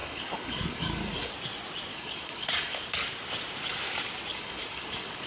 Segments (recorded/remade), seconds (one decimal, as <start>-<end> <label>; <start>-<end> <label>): 0.0-1.3 remade; 1.3-1.9 recorded; 1.9-2.8 remade; 2.8-4.3 recorded; 4.3-5.3 remade